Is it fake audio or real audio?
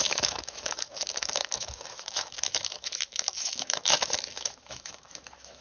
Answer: fake